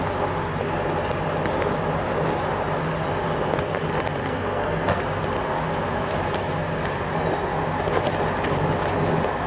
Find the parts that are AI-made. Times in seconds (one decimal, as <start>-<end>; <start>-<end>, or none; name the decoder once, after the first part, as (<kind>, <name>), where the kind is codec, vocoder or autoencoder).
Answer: 4.2-5.0 (codec, SNAC)